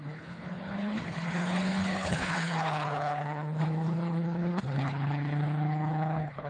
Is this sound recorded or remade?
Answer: remade